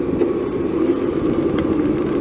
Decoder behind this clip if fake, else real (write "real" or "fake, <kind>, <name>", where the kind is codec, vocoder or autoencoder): real